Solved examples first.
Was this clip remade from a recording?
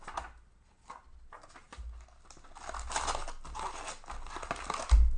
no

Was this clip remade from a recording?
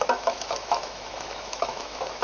yes